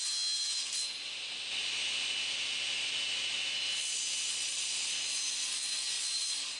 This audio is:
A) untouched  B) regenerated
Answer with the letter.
A